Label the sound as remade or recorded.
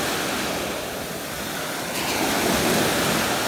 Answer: recorded